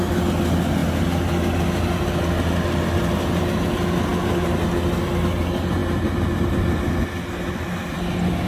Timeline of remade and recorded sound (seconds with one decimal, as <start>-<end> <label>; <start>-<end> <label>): 0.0-8.5 recorded